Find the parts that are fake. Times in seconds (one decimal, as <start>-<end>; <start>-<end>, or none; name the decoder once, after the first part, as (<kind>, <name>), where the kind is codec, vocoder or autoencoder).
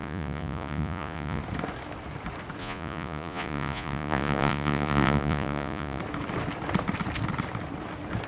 0.0-1.4 (vocoder, Vocos); 2.6-6.0